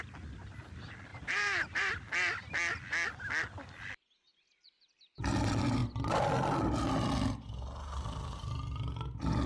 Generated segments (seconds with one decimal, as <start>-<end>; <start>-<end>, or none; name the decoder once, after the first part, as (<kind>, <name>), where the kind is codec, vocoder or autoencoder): 1.1-1.9 (vocoder, BigVGAN v2)